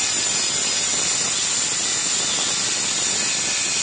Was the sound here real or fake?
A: real